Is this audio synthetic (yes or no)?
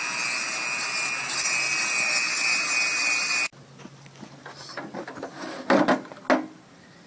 no